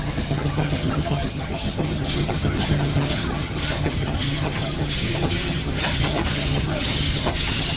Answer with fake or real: fake